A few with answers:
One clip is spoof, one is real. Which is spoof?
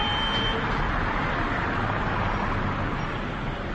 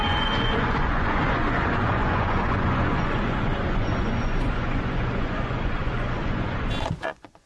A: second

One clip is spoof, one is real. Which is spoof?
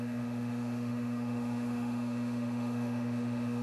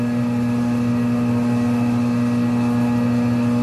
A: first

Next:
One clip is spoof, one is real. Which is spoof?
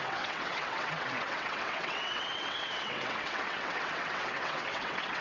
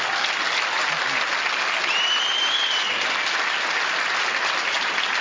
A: first